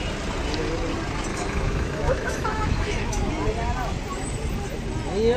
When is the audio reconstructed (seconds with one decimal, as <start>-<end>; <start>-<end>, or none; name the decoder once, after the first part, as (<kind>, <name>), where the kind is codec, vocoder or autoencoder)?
1.3-3.3 (autoencoder, DAC-VAE)